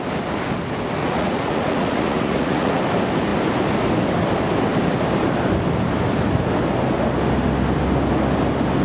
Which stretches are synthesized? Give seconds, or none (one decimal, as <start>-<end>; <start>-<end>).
1.0-2.8